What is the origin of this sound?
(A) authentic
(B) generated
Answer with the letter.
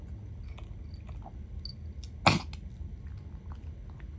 A